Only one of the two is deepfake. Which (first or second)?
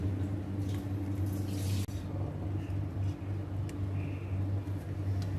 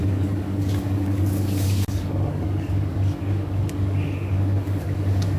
second